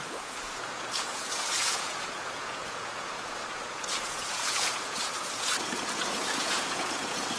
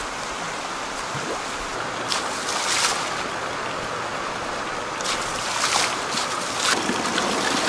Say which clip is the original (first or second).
second